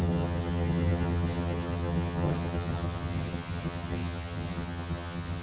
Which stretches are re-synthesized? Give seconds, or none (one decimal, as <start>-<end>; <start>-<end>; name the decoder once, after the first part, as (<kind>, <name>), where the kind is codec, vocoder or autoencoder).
0.0-5.4 (vocoder, HiFi-GAN)